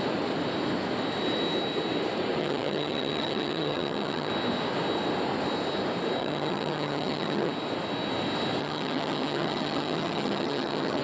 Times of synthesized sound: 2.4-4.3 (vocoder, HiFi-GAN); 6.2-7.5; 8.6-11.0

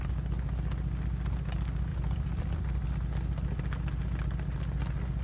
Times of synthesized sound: 1.9-2.7 (vocoder, BigVGAN v2)

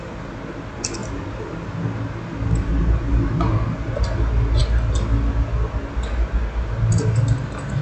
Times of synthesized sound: none

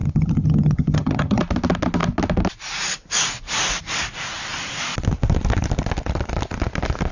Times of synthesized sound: 0.0-1.4 (vocoder, HiFi-GAN)

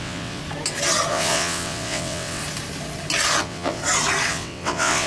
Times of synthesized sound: 0.0-0.4 (vocoder, WaveNeXt); 1.1-2.4; 3.4-3.8; 4.3-5.1